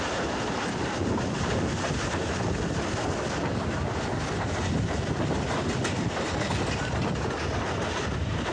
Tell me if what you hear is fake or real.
real